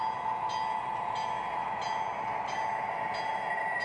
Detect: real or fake real